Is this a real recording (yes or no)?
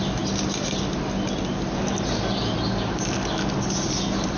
yes